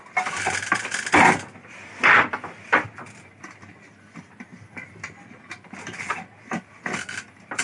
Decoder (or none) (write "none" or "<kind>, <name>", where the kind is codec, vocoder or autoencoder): none